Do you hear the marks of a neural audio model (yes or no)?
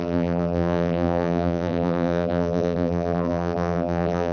yes